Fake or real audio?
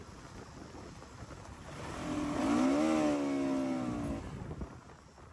real